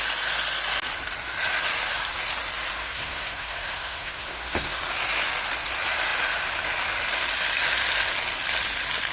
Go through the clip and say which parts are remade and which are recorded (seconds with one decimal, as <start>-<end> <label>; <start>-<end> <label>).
0.0-2.8 recorded; 2.8-4.8 remade; 4.8-9.1 recorded